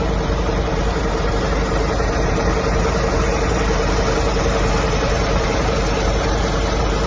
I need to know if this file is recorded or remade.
remade